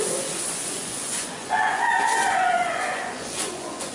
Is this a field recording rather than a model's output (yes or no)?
no